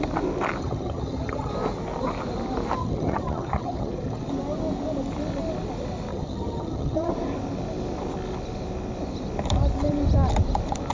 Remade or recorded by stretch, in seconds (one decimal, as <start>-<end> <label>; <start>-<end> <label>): 0.0-0.6 recorded; 0.6-1.5 remade; 1.5-2.8 recorded; 2.8-4.3 remade; 4.3-6.1 recorded; 6.1-7.1 remade; 7.1-10.9 recorded